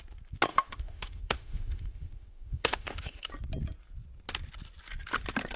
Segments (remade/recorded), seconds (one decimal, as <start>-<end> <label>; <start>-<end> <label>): 0.0-0.5 recorded; 0.5-3.3 remade; 3.3-5.6 recorded